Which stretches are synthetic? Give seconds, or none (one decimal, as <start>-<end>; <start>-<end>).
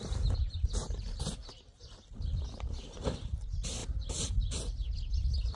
none